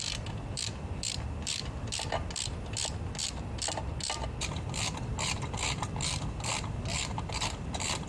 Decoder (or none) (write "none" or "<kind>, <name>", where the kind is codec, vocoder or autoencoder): vocoder, BigVGAN v2